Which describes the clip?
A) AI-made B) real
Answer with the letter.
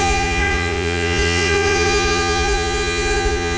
A